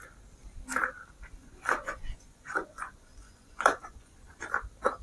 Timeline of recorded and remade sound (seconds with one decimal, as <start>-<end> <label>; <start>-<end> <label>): 0.0-1.4 recorded; 1.4-4.4 remade; 4.4-5.0 recorded